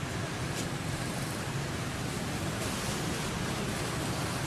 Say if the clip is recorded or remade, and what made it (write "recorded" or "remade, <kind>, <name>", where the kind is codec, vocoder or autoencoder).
remade, vocoder, BigVGAN v2